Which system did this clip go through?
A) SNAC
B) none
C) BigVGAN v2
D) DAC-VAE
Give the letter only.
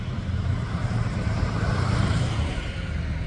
C